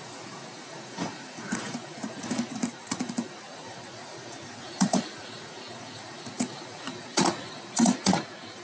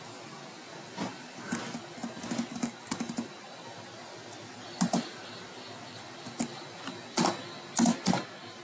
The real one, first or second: second